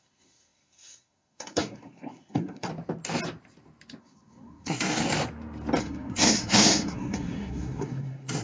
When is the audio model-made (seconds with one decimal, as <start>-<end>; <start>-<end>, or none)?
0.0-2.7; 4.0-5.0; 5.8-8.4